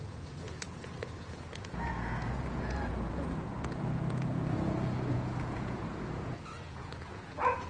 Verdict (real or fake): fake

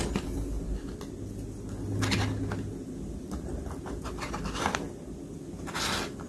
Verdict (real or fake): real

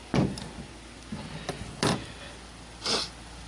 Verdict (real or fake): real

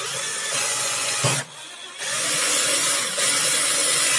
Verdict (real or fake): fake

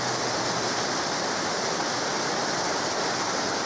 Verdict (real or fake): real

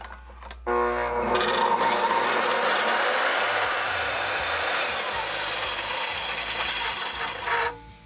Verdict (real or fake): real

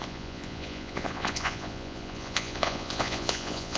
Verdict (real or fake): fake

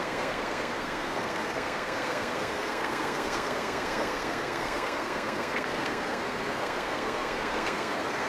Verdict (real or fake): fake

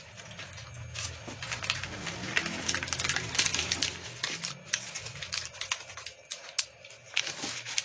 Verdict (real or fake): real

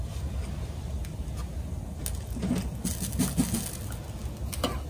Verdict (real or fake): real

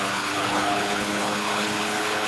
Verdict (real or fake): fake